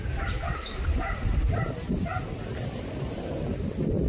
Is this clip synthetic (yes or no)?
no